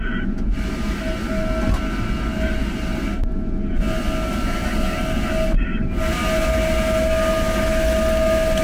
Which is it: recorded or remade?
recorded